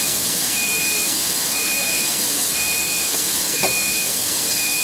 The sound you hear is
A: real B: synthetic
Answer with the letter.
B